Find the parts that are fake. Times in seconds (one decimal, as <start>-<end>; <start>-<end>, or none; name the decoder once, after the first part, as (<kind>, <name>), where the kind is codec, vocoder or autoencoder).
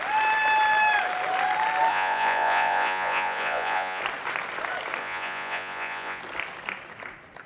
1.9-4.0 (vocoder, Vocos); 5.0-6.2